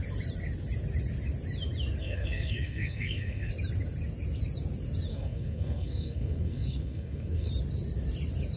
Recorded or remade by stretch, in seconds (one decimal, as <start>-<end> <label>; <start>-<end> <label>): 0.0-2.0 recorded; 2.0-3.5 remade; 3.5-5.1 recorded; 5.1-7.5 remade; 7.5-8.6 recorded